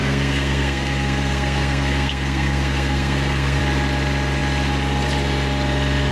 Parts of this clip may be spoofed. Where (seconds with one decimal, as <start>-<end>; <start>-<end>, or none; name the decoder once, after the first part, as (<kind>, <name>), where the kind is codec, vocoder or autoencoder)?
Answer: 0.0-3.6 (codec, SNAC)